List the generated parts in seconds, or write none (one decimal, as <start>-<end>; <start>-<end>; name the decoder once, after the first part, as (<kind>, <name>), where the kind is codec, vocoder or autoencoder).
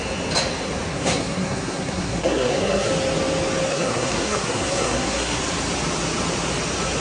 0.9-2.9 (codec, SNAC); 3.7-5.4